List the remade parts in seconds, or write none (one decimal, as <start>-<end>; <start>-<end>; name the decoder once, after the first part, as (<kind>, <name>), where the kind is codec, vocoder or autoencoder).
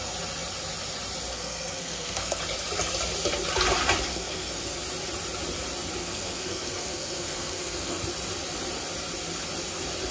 1.3-2.4 (codec, SNAC); 4.1-4.8; 6.0-8.0